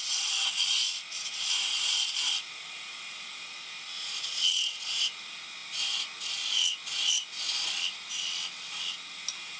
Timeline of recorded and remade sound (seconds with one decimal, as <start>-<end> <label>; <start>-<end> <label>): 0.0-9.6 recorded